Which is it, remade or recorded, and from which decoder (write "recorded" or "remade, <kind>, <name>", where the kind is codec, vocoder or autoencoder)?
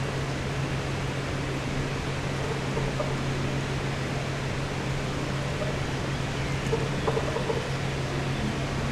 recorded